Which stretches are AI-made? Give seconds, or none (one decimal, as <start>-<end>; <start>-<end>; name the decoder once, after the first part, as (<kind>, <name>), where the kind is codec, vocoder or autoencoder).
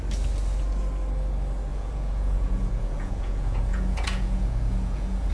1.7-5.3 (vocoder, Vocos)